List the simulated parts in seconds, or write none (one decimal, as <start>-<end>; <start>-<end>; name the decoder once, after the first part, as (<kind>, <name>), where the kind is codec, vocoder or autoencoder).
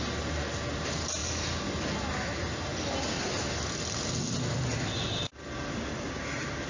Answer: none